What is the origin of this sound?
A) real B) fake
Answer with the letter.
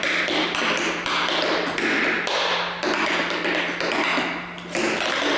A